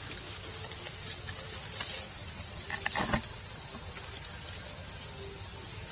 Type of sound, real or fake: real